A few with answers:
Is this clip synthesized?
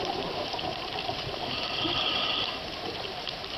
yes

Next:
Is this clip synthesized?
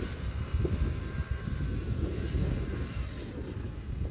no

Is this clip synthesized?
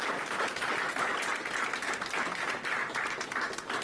no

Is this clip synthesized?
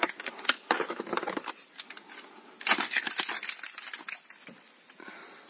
no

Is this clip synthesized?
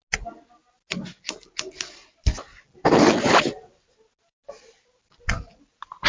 no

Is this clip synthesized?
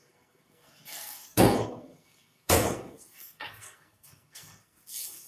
yes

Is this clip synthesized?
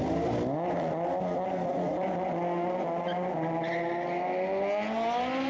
no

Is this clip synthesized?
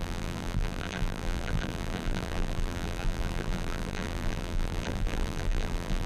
yes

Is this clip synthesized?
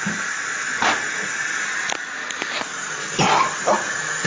no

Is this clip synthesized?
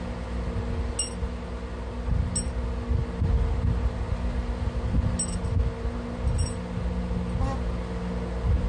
no